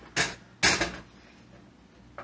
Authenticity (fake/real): real